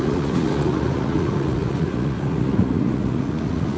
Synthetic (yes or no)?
yes